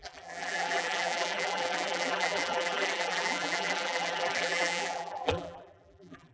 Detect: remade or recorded remade